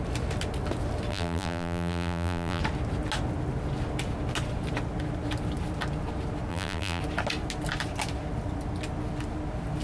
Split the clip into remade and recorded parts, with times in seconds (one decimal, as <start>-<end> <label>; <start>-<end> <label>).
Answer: 0.0-1.1 recorded; 1.1-2.6 remade; 2.6-6.5 recorded; 6.5-7.0 remade; 7.0-9.8 recorded

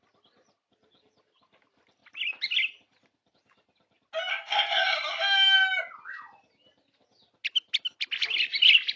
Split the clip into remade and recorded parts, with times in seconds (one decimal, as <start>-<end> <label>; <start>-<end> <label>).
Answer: 0.0-4.3 recorded; 4.3-5.2 remade; 5.2-9.0 recorded

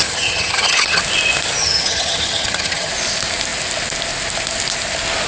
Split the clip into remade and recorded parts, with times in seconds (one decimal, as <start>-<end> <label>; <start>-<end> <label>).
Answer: 0.0-1.0 remade; 1.0-1.6 recorded; 1.6-2.9 remade; 2.9-5.3 recorded

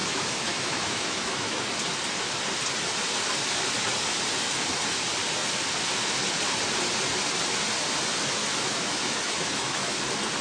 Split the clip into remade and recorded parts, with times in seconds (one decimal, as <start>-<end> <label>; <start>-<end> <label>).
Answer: 0.0-1.7 remade; 1.7-8.4 recorded; 8.4-10.0 remade; 10.0-10.4 recorded

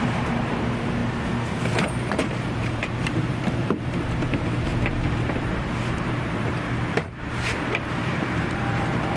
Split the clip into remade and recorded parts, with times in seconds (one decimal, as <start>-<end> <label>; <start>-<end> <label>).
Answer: 0.0-1.0 remade; 1.0-1.6 recorded; 1.6-9.2 remade

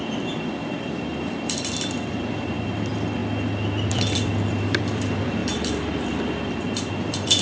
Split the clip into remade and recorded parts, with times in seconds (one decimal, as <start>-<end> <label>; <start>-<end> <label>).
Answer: 0.0-3.2 remade; 3.2-3.9 recorded; 3.9-7.4 remade